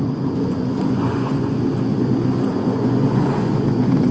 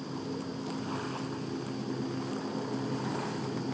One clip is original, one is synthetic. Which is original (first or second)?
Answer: second